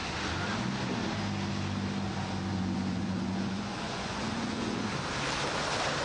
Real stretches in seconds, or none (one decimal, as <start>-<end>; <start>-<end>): 0.0-2.5; 4.9-6.0